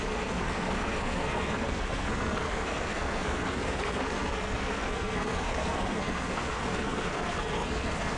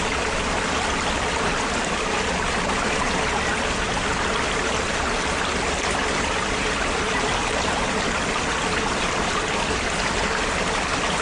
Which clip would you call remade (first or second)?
first